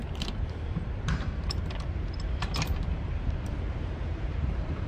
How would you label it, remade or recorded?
remade